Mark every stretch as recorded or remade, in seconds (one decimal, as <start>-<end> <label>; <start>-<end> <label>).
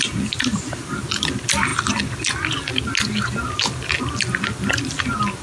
0.0-5.4 recorded